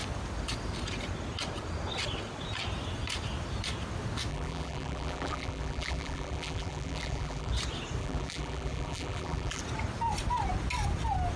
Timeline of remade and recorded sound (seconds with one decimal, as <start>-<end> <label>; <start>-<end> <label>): 0.0-4.3 recorded; 4.3-7.5 remade; 7.5-8.0 recorded; 8.0-9.6 remade; 9.6-11.4 recorded